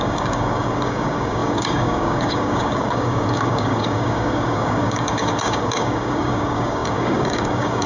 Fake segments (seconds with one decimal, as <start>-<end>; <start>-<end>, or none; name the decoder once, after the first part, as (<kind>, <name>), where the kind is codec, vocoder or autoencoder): 0.0-7.9 (codec, DAC)